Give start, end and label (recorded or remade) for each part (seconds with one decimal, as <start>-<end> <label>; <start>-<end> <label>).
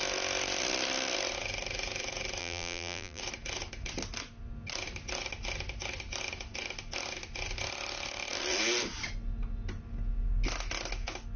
0.0-2.4 recorded; 2.4-3.2 remade; 3.2-11.4 recorded